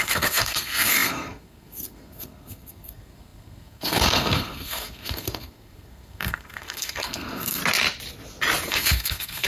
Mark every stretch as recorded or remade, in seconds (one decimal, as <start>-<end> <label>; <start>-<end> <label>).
0.0-7.6 remade; 7.6-8.7 recorded; 8.7-9.5 remade